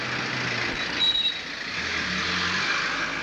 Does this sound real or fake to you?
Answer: real